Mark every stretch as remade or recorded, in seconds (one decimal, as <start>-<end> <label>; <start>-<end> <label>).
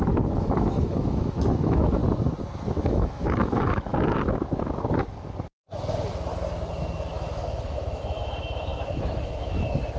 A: 0.0-2.0 remade; 2.0-2.8 recorded; 2.8-3.9 remade; 3.9-7.3 recorded; 7.3-10.0 remade